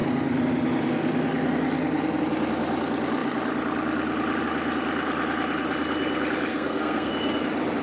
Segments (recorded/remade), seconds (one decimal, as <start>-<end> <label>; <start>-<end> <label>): 0.0-6.5 recorded; 6.5-7.1 remade; 7.1-7.8 recorded